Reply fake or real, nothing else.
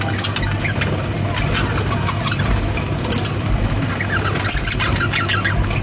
real